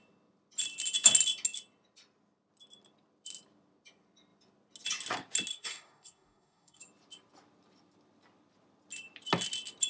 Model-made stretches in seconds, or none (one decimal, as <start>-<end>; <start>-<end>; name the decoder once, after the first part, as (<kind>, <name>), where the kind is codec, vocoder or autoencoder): 5.5-6.8 (codec, DAC)